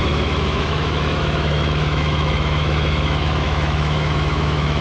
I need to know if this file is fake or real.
fake